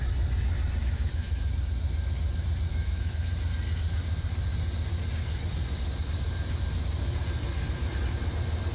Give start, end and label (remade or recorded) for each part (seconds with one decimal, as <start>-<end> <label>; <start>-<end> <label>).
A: 0.0-0.8 recorded; 0.8-1.5 remade; 1.5-2.7 recorded; 2.7-3.3 remade; 3.3-8.7 recorded